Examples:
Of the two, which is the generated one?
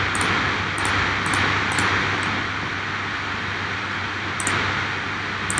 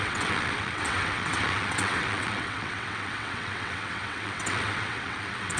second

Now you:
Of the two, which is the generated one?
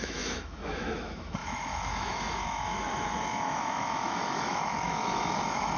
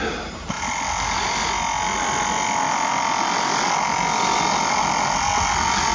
first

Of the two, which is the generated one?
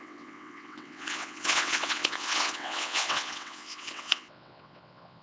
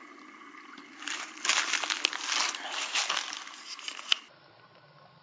first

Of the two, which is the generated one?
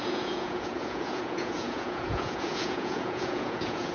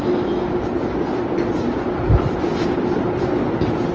first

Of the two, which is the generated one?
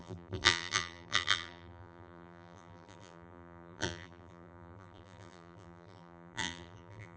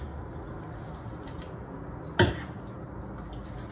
first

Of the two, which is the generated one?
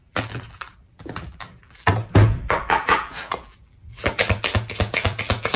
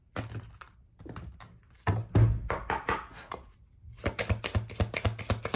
first